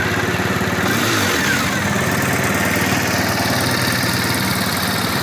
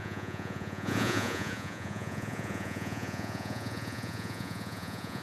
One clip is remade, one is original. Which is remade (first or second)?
second